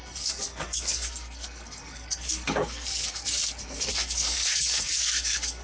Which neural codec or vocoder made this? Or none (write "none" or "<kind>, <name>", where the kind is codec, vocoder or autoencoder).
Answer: codec, SNAC